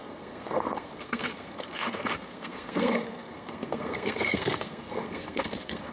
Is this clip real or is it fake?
fake